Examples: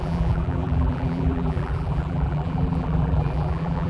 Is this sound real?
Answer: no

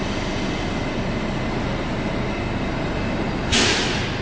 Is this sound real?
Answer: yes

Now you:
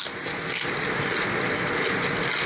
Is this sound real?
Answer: yes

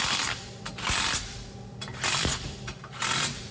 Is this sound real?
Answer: no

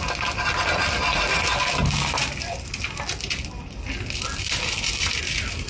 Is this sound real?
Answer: yes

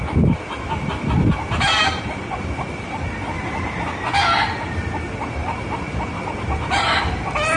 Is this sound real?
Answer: yes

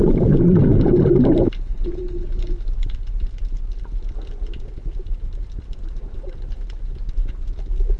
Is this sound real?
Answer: yes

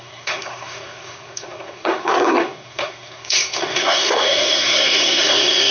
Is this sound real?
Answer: no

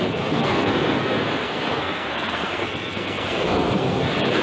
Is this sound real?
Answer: no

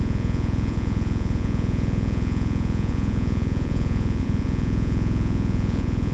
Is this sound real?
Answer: no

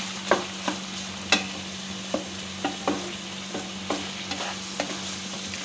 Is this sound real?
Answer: yes